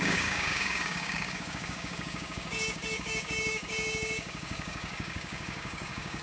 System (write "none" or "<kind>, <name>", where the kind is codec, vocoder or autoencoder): codec, DAC